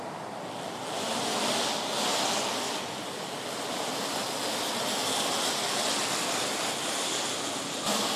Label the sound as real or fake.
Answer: real